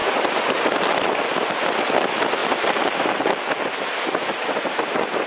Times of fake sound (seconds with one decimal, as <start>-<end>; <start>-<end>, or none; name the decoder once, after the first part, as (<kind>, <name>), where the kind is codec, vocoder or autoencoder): 0.0-0.6 (vocoder, BigVGAN v2); 2.4-5.3